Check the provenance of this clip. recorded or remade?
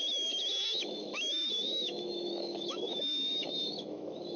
remade